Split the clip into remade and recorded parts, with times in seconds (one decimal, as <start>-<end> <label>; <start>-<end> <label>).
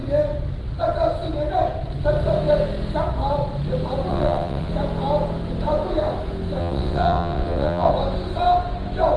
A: 0.0-4.1 recorded; 4.1-4.7 remade; 4.7-6.6 recorded; 6.6-7.9 remade; 7.9-9.2 recorded